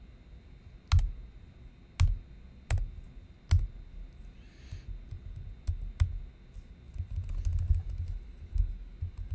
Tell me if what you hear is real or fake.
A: real